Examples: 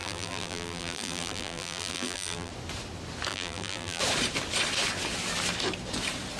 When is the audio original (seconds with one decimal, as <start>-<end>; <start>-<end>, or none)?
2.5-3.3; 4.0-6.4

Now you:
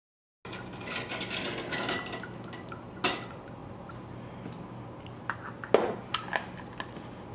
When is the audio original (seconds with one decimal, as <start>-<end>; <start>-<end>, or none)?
0.0-3.6; 4.3-7.3

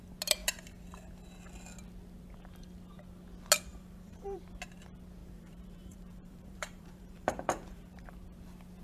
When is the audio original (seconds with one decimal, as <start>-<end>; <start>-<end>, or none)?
0.0-3.7; 4.4-5.2; 8.1-8.8

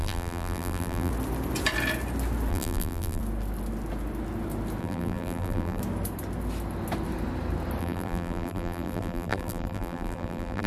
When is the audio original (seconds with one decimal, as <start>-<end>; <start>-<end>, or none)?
1.1-2.5; 3.2-4.8; 5.8-7.8

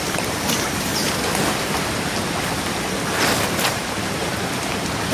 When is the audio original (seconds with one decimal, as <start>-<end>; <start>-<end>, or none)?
0.9-3.7; 4.3-5.1

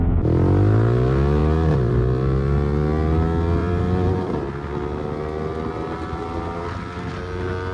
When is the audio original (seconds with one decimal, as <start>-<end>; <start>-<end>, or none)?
0.0-1.4; 1.9-3.6; 4.5-7.7